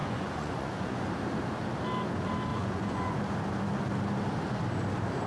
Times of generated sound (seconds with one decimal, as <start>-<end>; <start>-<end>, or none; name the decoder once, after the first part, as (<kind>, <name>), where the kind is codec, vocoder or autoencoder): 0.0-1.1 (vocoder, Vocos); 2.5-3.2